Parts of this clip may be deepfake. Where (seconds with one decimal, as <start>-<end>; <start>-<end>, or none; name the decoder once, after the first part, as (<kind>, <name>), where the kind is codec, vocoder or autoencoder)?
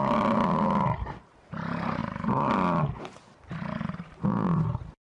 none